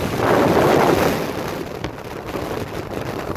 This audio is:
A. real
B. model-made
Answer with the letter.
A